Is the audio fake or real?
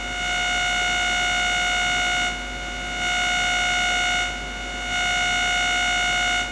real